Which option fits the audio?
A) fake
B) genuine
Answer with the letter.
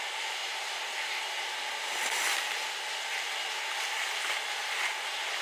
B